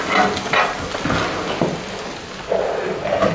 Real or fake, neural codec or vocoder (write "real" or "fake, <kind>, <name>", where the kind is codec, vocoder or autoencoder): real